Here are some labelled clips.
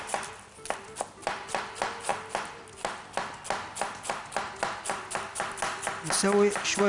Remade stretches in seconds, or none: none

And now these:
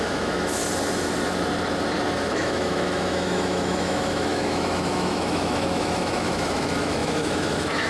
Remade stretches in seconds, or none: 0.0-0.6 (autoencoder, DAC-VAE); 2.3-7.9

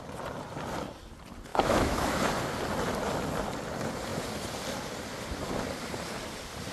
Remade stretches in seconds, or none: 1.5-2.2 (autoencoder, DAC-VAE)

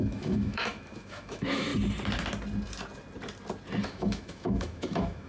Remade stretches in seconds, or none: 0.0-1.7 (autoencoder, DAC-VAE); 3.9-5.3

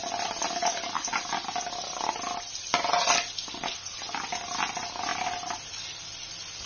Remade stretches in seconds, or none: none